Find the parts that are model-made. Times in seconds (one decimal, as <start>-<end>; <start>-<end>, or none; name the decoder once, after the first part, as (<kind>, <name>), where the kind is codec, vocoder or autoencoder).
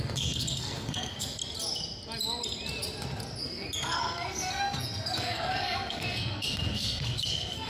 0.0-1.4 (codec, SNAC); 3.4-7.7